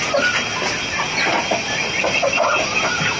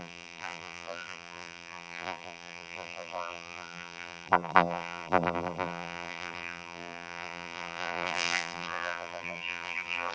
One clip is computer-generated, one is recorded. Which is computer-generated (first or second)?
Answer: second